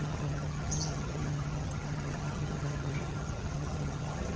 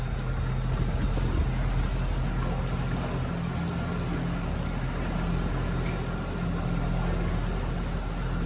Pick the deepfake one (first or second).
first